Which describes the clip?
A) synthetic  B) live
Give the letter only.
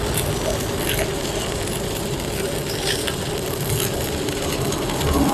B